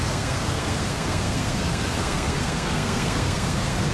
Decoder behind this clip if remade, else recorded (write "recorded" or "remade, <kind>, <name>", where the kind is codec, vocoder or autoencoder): remade, codec, SNAC